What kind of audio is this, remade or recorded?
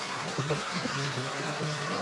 remade